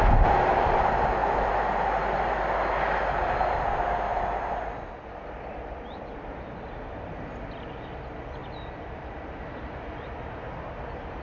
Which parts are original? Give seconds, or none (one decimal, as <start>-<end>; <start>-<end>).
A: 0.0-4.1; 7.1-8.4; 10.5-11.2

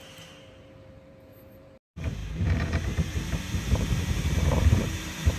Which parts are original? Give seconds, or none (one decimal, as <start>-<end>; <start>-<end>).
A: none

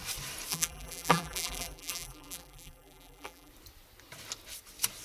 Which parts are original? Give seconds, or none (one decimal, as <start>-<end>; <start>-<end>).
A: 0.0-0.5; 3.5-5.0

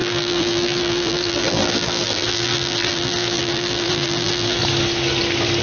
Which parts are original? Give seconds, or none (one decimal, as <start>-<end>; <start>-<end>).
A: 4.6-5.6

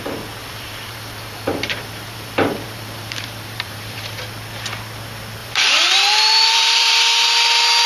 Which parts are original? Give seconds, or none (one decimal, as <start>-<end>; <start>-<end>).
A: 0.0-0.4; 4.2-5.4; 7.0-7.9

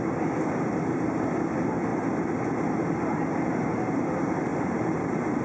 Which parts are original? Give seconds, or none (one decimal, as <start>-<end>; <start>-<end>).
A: 0.0-1.9; 3.4-4.5